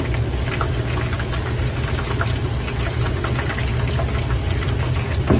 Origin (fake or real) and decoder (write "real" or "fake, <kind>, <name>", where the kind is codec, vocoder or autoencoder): real